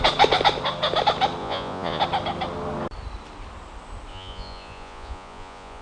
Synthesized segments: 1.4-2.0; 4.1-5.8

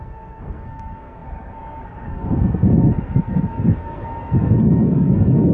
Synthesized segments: 0.0-5.5